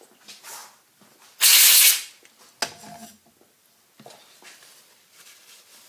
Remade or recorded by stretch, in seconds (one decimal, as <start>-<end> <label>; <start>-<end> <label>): 0.0-5.9 recorded